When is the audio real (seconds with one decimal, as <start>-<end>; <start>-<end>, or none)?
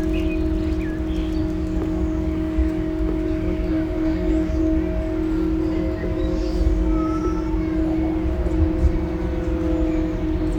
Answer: 0.0-1.4; 4.6-6.0; 6.6-10.6